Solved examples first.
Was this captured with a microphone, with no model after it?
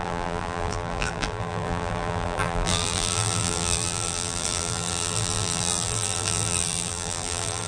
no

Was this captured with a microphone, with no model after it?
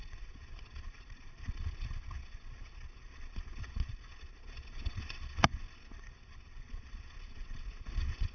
no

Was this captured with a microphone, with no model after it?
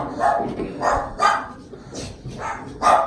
yes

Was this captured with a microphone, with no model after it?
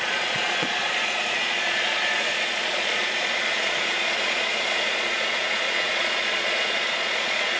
no